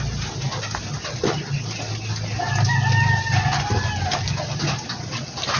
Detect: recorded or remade recorded